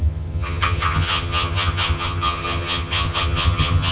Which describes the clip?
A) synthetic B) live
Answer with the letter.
A